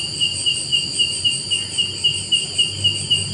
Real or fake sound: real